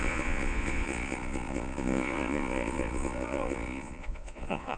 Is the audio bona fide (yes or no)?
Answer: no